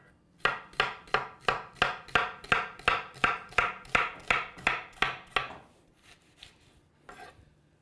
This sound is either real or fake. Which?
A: real